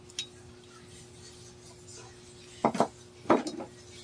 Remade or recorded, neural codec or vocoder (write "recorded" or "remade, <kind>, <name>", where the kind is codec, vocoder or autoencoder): recorded